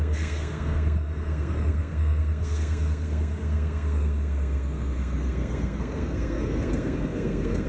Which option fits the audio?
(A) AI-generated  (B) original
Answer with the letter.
A